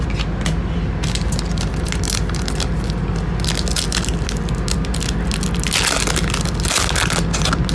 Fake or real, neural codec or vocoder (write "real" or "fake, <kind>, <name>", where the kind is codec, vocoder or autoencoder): real